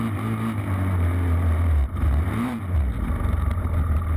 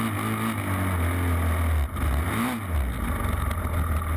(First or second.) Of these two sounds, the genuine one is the second